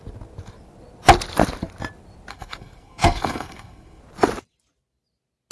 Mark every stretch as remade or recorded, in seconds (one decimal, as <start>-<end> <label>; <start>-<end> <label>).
0.0-2.3 recorded; 2.3-4.0 remade; 4.0-5.5 recorded